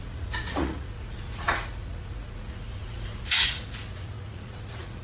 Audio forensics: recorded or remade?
remade